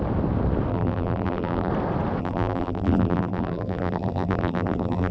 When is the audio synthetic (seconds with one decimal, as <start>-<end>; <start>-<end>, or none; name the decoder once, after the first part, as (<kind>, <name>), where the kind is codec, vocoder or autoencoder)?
0.7-1.7 (vocoder, BigVGAN v2); 2.2-5.1